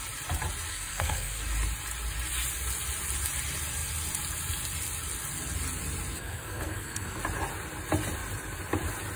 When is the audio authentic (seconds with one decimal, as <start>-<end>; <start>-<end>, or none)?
0.0-0.7; 1.4-6.1; 7.2-9.2